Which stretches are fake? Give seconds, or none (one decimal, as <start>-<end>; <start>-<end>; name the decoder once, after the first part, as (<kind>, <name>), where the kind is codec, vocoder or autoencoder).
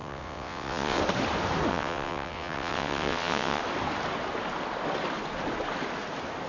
0.0-1.0 (vocoder, WaveNeXt); 1.7-3.6